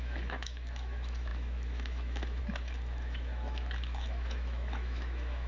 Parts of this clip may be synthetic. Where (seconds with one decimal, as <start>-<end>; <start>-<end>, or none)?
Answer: 0.0-5.5